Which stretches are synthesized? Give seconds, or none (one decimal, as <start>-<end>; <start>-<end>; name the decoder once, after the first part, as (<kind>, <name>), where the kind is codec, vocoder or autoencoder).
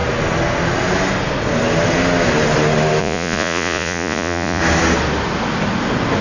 3.0-4.6 (vocoder, Vocos)